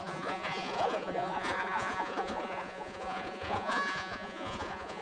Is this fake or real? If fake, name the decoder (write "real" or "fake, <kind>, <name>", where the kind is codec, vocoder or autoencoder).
fake, vocoder, Vocos